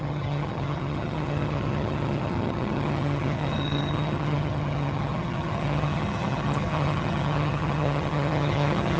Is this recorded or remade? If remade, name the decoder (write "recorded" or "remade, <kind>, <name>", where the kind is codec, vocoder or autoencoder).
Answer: remade, vocoder, HiFi-GAN